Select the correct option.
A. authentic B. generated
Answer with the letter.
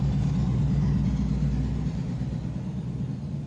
A